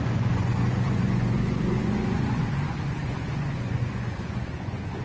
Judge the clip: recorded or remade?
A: remade